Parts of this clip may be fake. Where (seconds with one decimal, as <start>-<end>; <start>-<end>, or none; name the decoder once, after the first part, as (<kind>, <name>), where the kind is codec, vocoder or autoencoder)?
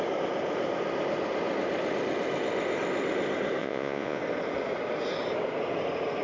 3.6-4.2 (vocoder, Vocos)